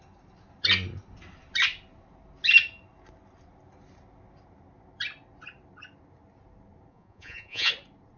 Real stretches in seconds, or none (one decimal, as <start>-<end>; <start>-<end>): 0.0-6.9; 7.7-8.2